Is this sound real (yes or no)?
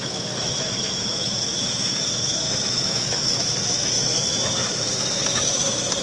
no